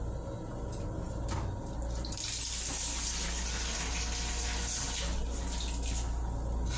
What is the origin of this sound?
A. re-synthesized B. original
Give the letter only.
B